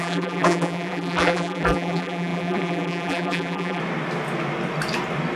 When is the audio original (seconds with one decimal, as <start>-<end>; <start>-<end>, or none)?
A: 3.8-5.4